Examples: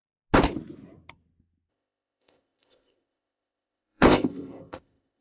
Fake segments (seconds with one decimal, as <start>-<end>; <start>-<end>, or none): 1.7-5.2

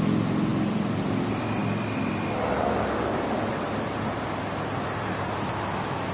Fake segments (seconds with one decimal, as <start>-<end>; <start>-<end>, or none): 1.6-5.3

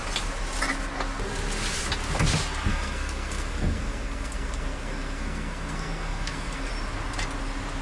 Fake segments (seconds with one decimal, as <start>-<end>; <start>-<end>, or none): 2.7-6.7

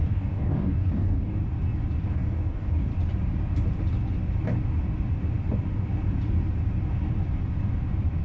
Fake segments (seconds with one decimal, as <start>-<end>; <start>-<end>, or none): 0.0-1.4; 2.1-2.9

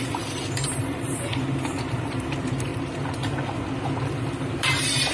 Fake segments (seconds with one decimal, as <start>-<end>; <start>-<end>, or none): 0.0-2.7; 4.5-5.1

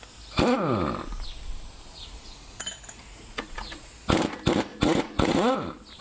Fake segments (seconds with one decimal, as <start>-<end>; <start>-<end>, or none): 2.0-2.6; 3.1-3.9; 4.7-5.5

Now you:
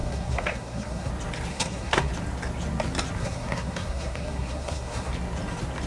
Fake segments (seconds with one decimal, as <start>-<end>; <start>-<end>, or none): 0.0-1.1; 1.5-2.1; 3.2-5.1

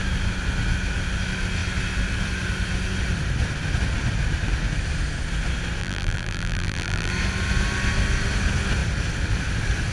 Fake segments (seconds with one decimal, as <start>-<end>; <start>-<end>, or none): 5.8-7.1